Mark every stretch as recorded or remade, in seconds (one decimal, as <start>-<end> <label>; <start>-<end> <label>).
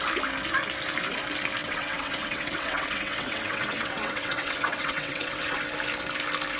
0.0-1.6 recorded; 1.6-5.6 remade; 5.6-6.6 recorded